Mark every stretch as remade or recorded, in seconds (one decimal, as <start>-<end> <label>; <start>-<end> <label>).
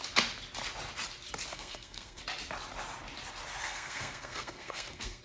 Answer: 0.0-1.5 recorded; 1.5-2.2 remade; 2.2-3.6 recorded; 3.6-5.2 remade